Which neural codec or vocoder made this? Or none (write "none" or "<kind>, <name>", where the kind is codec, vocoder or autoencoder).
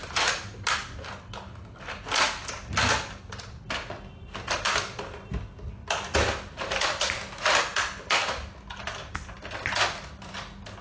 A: none